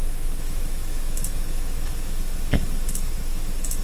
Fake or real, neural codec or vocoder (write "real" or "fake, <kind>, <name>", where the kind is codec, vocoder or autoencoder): fake, autoencoder, DAC-VAE